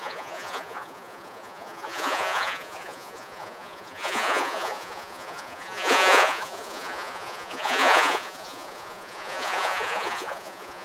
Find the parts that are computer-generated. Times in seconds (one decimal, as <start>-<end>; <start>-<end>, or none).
0.0-10.8